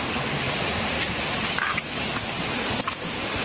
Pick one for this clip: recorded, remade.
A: remade